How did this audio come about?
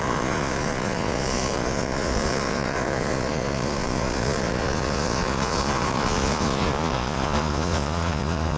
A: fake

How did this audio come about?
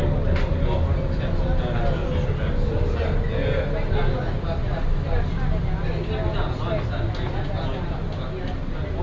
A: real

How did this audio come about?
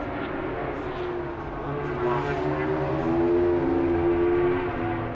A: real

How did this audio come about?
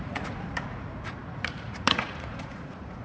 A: fake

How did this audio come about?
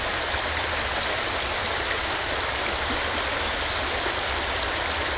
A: real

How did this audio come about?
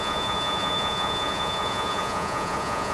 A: fake